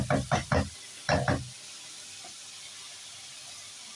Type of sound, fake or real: real